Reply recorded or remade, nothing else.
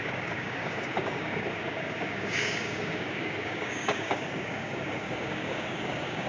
remade